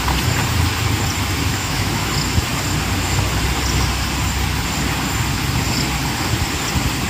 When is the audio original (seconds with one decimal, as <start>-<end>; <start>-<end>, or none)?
0.0-1.5; 2.1-7.1